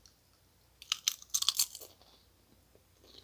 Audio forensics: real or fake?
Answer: real